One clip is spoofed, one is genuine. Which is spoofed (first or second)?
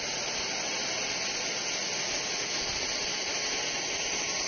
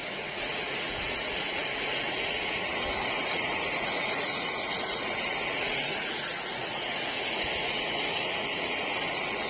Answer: second